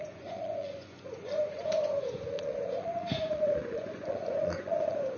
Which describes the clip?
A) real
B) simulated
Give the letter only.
B